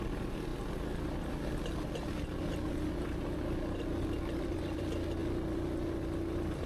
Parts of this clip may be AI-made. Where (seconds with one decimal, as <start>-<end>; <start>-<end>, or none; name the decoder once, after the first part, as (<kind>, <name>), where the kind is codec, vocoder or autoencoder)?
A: none

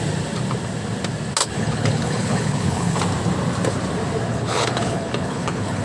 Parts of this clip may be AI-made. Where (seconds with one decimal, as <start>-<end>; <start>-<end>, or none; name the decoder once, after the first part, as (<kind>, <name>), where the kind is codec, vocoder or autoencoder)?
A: 1.4-3.0 (codec, HILCodec); 4.3-5.8